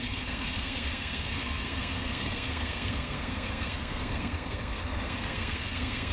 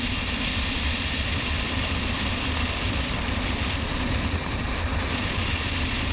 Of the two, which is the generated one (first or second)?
first